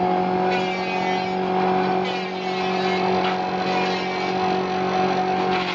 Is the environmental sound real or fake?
real